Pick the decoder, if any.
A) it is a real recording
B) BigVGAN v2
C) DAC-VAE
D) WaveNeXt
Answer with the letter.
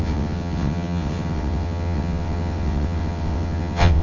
D